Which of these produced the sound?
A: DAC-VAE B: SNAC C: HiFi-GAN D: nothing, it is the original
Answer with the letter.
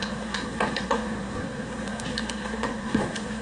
B